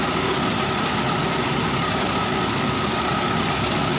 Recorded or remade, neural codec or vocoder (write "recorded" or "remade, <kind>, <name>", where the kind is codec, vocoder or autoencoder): recorded